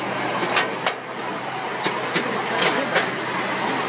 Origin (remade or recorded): recorded